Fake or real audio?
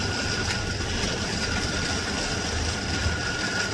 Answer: real